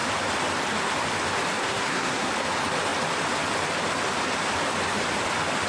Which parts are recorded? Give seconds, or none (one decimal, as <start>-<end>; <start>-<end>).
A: 0.0-1.6; 2.3-5.7